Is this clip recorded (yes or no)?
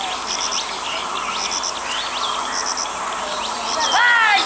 yes